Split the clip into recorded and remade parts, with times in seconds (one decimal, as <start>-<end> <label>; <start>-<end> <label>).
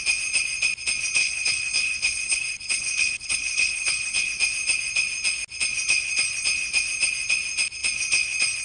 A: 0.0-1.2 recorded; 1.2-4.3 remade; 4.3-8.6 recorded